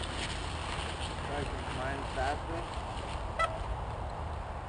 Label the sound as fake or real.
real